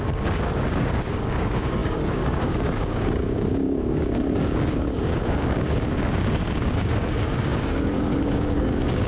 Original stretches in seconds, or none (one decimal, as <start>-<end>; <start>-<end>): none